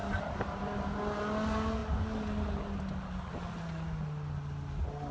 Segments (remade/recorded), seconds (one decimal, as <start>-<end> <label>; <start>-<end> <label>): 0.0-5.1 recorded